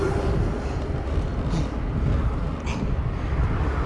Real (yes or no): yes